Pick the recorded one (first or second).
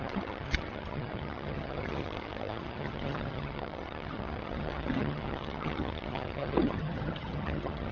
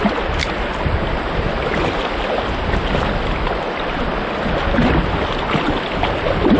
second